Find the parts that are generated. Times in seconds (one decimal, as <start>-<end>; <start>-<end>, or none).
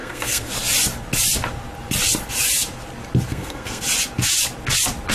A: 0.0-0.5; 3.3-3.8